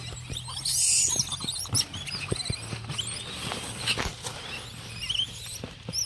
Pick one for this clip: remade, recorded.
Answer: recorded